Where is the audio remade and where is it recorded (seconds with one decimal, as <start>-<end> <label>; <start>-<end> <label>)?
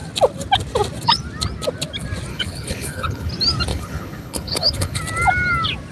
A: 0.0-2.3 recorded; 2.3-3.3 remade; 3.3-3.7 recorded; 3.7-5.0 remade; 5.0-5.9 recorded